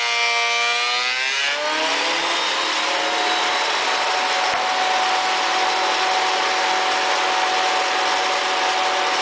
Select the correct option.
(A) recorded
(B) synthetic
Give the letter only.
A